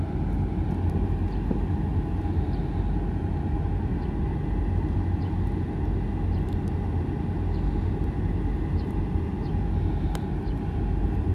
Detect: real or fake real